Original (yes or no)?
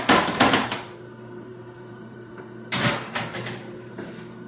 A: no